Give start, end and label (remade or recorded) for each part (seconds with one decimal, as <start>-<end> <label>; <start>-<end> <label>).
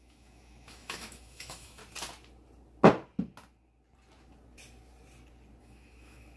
0.0-1.8 remade; 1.8-5.6 recorded; 5.6-6.4 remade